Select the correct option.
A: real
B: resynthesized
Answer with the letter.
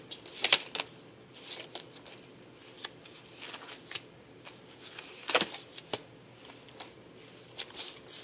A